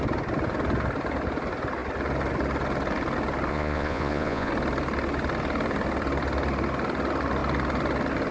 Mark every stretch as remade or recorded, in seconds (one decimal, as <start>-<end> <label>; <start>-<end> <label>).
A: 0.0-3.5 recorded; 3.5-4.5 remade; 4.5-8.3 recorded